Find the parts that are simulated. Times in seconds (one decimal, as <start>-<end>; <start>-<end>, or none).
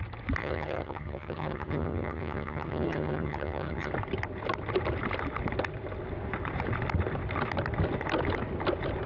0.4-3.9